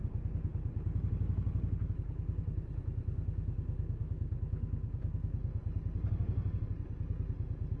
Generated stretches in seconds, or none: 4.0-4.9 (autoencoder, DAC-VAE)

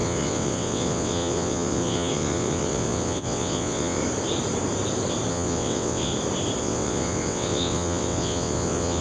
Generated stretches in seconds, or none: 0.0-4.0 (vocoder, WaveNeXt); 5.3-6.1; 6.6-9.0

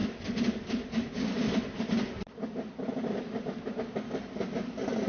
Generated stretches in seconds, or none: none